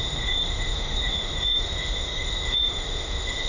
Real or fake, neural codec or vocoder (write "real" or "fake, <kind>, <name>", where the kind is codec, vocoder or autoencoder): fake, autoencoder, DAC-VAE